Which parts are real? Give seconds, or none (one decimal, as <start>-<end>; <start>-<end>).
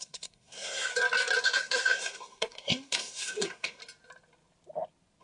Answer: 0.9-1.4; 3.8-5.2